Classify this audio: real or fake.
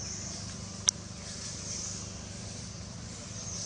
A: real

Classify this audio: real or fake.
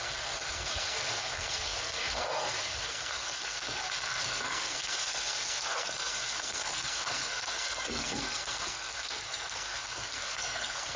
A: fake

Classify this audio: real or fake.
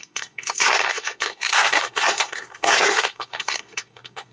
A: fake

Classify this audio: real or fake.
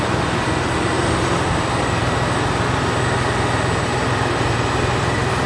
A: real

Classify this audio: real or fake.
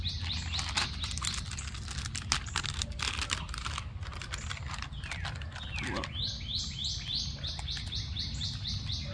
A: real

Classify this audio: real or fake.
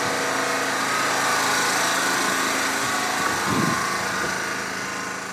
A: real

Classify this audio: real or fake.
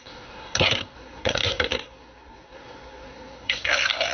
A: fake